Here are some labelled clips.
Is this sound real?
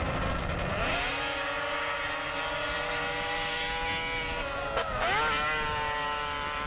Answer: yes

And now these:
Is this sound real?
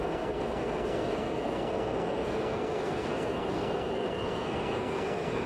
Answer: no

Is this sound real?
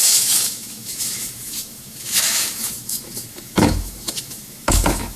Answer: no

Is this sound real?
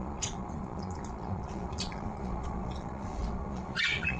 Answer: no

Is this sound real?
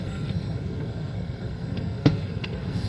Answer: no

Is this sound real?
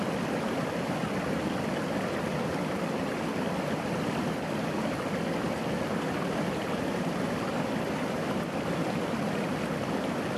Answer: yes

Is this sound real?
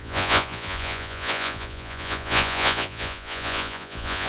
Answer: no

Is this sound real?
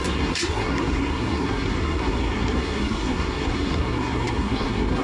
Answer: no